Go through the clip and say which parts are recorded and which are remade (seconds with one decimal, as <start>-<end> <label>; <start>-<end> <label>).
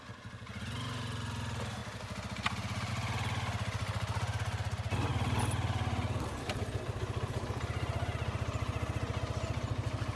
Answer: 0.0-10.2 recorded